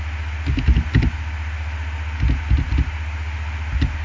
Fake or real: real